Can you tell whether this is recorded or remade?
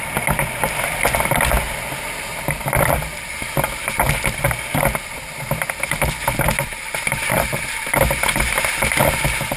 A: recorded